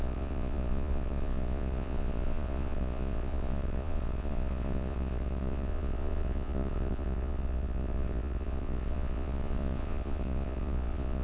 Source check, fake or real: fake